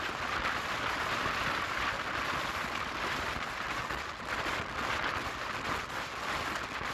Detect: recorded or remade recorded